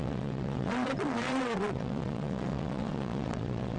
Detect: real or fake fake